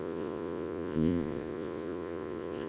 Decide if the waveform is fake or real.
fake